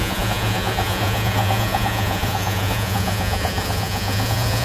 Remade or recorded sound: remade